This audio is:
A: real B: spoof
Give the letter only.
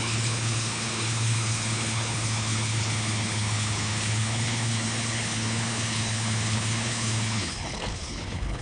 B